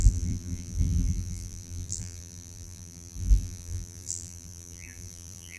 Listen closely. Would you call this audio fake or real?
fake